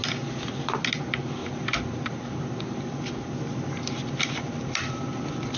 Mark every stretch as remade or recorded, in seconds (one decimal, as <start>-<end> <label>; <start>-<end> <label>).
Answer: 0.0-5.6 recorded